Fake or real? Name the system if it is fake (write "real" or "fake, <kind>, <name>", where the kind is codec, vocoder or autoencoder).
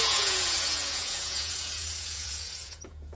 fake, vocoder, Vocos